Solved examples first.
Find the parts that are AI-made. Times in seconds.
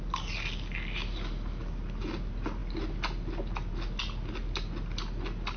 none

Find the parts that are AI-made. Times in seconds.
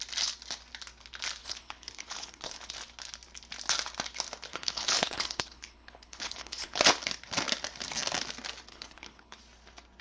1.4-2.7; 4.5-6.8; 8.7-9.4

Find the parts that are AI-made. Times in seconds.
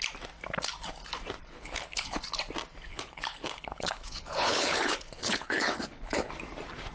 1.4-2.2; 2.9-6.3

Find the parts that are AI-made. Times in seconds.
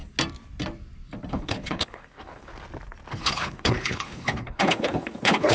1.3-2.5; 3.1-5.5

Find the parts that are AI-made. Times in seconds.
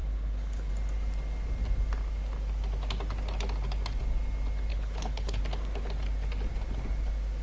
0.0-0.7; 4.7-5.4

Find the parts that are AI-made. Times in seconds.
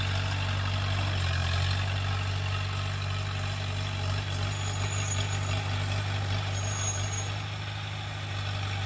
none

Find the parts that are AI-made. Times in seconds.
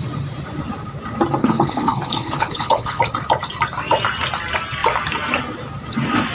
1.4-3.0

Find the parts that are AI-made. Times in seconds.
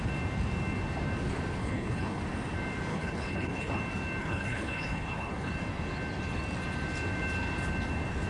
1.6-2.2; 2.9-3.8; 4.2-5.5